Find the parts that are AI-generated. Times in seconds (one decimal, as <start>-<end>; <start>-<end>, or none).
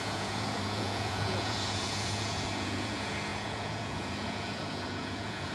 0.0-5.5